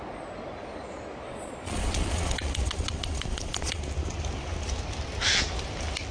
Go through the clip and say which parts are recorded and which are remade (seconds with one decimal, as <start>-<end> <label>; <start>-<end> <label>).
0.0-1.3 recorded; 1.3-3.8 remade; 3.8-6.1 recorded